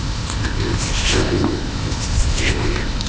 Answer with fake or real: fake